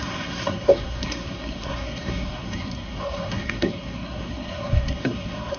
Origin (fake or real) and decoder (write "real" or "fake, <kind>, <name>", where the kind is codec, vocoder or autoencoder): fake, codec, SNAC